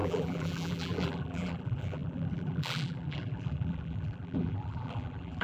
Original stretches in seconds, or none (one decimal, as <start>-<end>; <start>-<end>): none